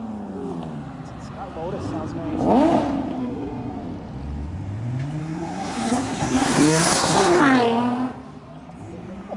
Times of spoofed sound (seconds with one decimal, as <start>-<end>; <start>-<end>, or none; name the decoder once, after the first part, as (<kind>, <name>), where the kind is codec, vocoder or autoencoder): 3.2-3.7 (codec, SNAC); 5.2-7.4